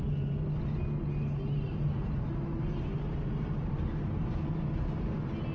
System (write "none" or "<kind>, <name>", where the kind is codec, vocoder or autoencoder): none